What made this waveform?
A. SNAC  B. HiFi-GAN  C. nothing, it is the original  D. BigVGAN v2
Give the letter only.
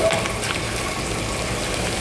C